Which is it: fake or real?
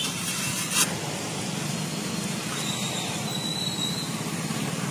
real